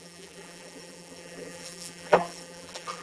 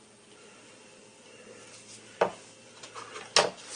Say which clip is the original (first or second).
second